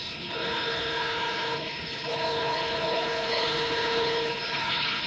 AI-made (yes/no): yes